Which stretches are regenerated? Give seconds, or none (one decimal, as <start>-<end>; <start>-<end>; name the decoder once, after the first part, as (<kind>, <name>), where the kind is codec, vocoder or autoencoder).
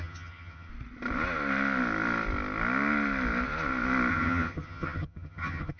0.0-0.7 (vocoder, HiFi-GAN); 4.1-5.8